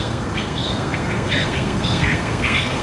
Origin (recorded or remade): remade